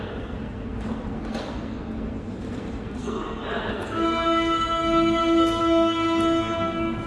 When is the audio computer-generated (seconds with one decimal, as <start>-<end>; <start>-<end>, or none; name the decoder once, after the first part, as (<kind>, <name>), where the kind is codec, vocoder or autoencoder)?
0.0-7.1 (codec, SNAC)